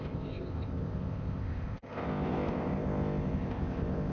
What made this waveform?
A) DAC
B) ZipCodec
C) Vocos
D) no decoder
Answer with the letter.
B